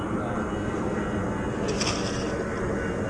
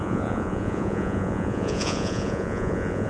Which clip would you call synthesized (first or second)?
second